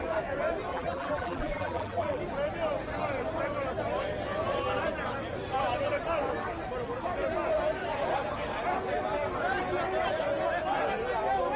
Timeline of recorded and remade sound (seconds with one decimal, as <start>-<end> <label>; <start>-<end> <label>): 0.0-0.7 recorded; 0.7-2.2 remade; 2.2-11.6 recorded